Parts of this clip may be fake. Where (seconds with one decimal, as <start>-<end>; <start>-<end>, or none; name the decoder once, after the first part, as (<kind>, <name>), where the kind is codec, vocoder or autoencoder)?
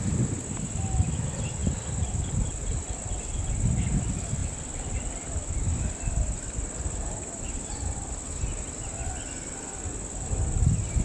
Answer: 1.6-3.0 (vocoder, BigVGAN v2); 4.4-8.2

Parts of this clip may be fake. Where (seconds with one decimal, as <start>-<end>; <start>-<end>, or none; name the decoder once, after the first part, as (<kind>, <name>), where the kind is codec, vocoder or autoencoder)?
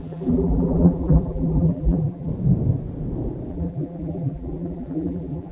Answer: 0.0-2.3 (vocoder, BigVGAN v2); 3.5-5.5